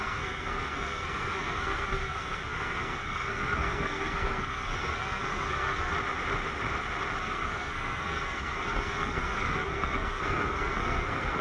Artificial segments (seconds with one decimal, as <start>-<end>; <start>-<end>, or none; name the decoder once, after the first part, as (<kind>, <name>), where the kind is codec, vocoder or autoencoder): 0.0-5.9 (codec, SNAC); 7.2-11.4

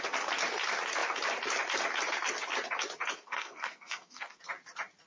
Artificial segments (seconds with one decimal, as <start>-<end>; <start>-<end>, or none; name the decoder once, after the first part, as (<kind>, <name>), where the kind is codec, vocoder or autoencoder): 3.1-4.4 (codec, SNAC)

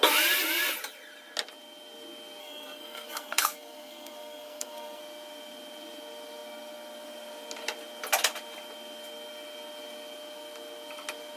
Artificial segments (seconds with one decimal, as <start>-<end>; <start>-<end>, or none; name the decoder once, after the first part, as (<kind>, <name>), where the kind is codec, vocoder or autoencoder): 2.4-5.0 (codec, SNAC)

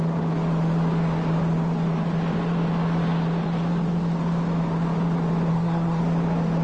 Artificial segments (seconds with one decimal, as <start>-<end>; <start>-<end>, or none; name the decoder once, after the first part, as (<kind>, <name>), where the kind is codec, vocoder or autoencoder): 5.5-6.0 (codec, SNAC)

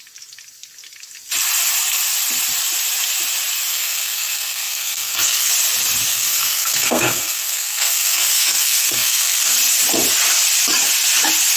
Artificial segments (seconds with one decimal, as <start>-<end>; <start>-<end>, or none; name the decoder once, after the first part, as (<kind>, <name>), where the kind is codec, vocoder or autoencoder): 3.7-5.5 (codec, SNAC); 6.1-9.5

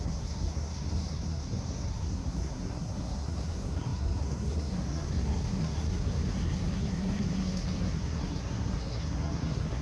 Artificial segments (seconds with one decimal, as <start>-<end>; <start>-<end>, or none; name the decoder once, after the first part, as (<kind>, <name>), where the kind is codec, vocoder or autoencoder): 0.0-9.8 (codec, SNAC)